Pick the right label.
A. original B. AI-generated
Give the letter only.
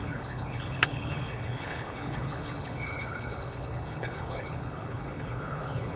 B